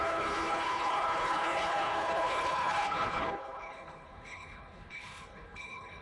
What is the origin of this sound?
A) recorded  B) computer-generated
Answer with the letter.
B